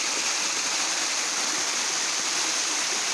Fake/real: real